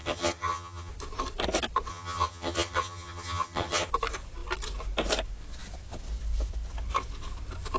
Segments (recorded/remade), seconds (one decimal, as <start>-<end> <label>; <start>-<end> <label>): 0.0-0.9 remade; 0.9-1.9 recorded; 1.9-3.9 remade; 3.9-7.8 recorded